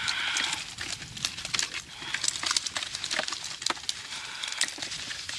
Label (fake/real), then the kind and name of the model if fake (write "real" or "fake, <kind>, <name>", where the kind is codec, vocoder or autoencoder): real